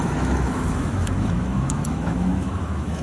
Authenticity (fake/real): fake